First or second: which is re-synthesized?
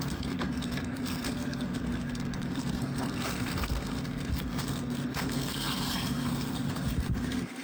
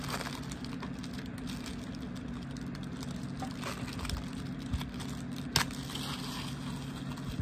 first